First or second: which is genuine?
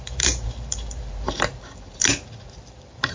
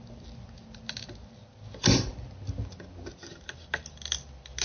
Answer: second